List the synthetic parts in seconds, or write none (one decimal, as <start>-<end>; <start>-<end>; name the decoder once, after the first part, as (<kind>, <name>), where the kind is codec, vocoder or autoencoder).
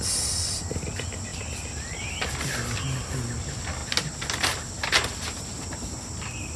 none